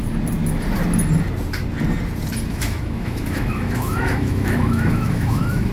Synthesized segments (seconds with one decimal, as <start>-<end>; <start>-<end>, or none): 2.5-5.7